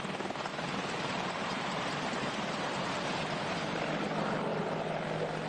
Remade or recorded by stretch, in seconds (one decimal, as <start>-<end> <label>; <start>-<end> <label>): 0.0-0.5 recorded; 0.5-3.8 remade; 3.8-5.5 recorded